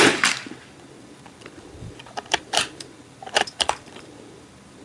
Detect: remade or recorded remade